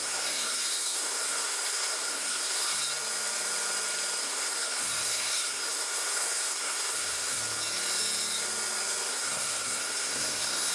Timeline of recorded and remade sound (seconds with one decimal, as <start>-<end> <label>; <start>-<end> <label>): 0.0-2.8 remade; 2.8-4.2 recorded; 4.2-7.4 remade; 7.4-9.1 recorded; 9.1-10.7 remade